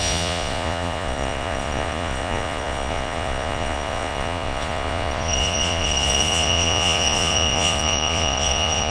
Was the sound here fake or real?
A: fake